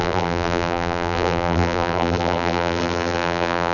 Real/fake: fake